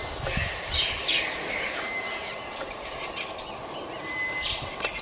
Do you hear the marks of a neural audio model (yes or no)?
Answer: no